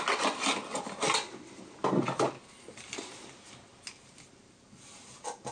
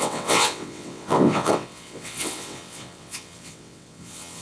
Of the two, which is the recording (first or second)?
first